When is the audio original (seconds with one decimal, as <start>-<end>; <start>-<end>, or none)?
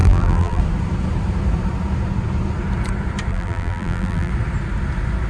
0.6-3.3; 4.3-5.3